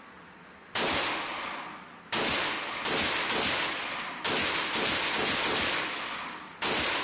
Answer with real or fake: real